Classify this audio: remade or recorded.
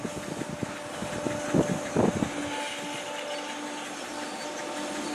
recorded